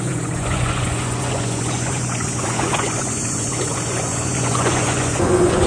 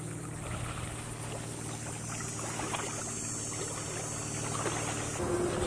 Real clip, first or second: second